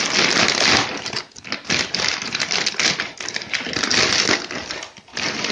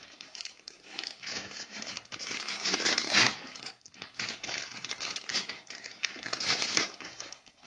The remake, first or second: second